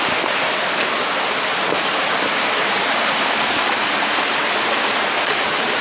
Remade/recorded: recorded